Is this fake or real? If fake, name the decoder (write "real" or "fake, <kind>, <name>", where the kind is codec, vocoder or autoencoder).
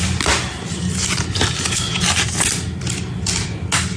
real